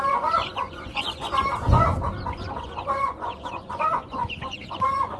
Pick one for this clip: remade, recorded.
remade